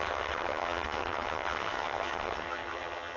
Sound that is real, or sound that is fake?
fake